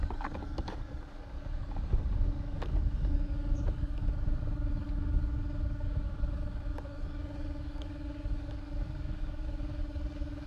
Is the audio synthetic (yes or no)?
yes